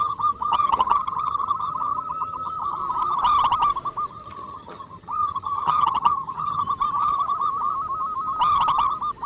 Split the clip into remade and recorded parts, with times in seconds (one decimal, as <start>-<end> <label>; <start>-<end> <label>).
0.0-2.8 remade; 2.8-4.1 recorded; 4.1-6.6 remade; 6.6-9.3 recorded